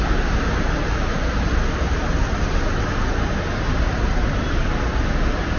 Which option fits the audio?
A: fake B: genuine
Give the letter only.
B